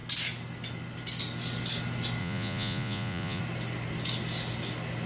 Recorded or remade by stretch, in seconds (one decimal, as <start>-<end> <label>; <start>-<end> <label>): 0.0-2.2 recorded; 2.2-3.4 remade; 3.4-5.1 recorded

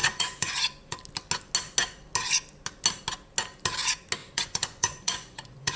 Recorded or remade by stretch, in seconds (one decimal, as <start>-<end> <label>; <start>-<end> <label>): 0.0-1.0 remade; 1.0-4.2 recorded; 4.2-5.8 remade

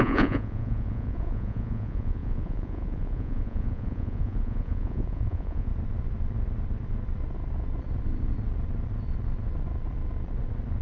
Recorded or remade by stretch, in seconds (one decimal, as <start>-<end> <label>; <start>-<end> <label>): 0.0-5.7 remade; 5.7-10.8 recorded

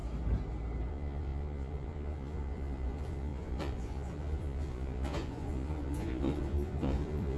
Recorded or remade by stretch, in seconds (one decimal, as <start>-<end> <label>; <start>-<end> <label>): 0.0-0.9 recorded; 0.9-7.4 remade